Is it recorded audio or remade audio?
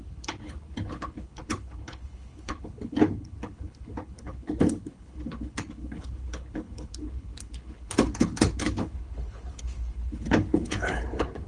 remade